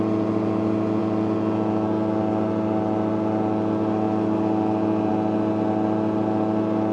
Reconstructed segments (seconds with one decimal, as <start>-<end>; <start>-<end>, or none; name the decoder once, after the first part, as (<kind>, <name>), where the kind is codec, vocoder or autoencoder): none